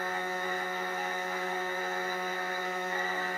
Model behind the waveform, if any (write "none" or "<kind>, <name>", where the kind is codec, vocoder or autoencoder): codec, SNAC